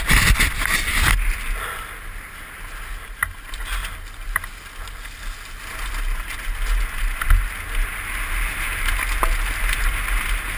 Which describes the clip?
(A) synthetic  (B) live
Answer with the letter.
B